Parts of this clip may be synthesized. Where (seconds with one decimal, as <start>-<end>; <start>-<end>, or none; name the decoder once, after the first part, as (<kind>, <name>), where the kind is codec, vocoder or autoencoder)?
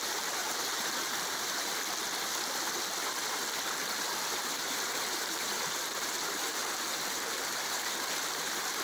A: 0.0-1.7 (vocoder, BigVGAN v2); 4.3-6.6; 7.3-8.8